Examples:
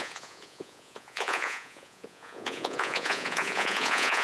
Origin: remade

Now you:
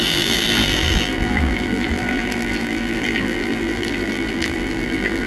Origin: remade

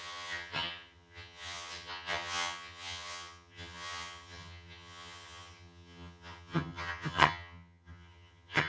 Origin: remade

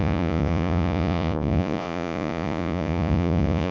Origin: remade